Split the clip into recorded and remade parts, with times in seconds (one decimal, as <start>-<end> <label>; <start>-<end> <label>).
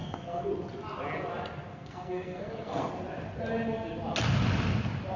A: 0.0-0.5 remade; 0.5-1.7 recorded; 1.7-2.9 remade; 2.9-5.2 recorded